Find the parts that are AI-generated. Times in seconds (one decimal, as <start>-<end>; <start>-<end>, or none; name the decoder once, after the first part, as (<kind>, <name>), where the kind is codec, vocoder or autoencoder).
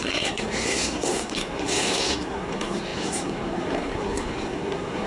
0.0-5.1 (codec, SNAC)